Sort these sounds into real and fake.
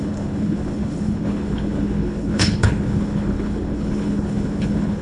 fake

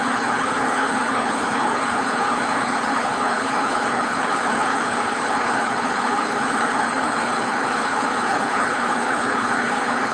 fake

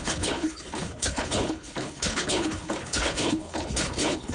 fake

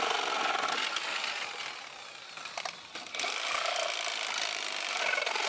real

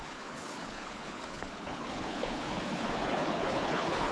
fake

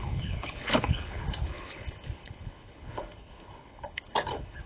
fake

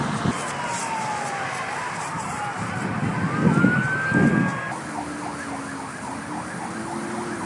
real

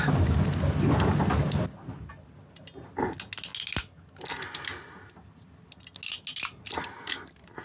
real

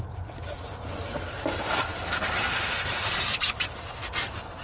real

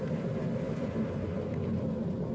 real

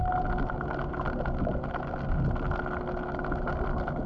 real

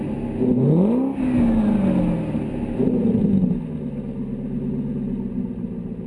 real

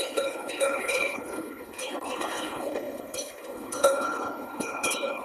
fake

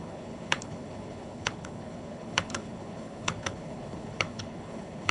fake